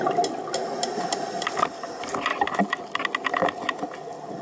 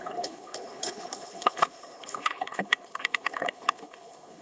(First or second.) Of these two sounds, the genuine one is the first